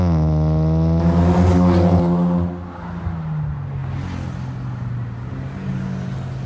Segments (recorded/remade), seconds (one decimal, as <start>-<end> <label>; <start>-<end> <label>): 0.0-6.5 recorded